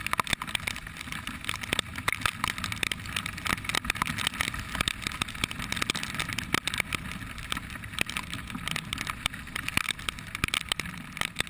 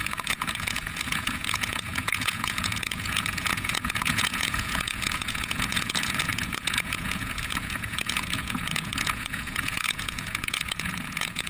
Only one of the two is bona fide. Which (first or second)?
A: first